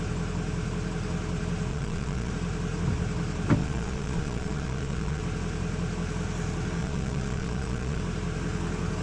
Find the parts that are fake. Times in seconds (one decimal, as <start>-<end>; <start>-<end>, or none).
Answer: 1.7-2.3; 3.6-5.2; 6.8-8.0